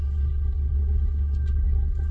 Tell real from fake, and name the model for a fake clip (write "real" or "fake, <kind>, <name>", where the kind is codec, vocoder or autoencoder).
fake, codec, SNAC